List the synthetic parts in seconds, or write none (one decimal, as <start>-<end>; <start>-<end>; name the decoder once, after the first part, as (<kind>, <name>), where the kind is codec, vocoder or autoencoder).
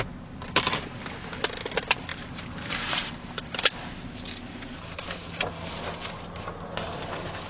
2.1-5.8 (vocoder, BigVGAN v2)